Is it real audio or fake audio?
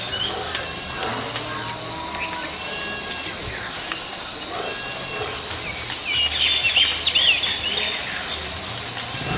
real